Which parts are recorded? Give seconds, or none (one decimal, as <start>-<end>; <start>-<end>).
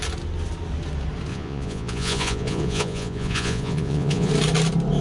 0.0-1.3; 4.3-5.0